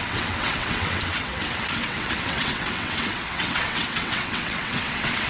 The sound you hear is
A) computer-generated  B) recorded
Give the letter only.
A